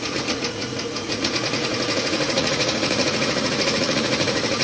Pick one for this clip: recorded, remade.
remade